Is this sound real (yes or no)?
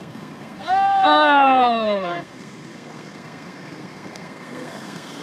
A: no